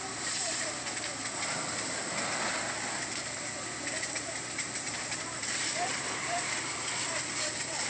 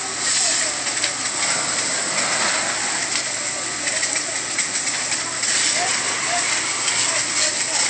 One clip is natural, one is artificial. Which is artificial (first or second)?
first